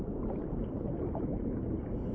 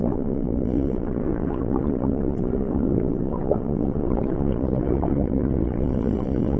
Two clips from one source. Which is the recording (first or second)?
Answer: first